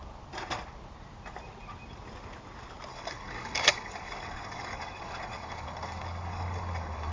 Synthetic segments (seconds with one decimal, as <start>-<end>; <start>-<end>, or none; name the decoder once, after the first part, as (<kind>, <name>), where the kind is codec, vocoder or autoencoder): 2.9-7.1 (codec, DAC)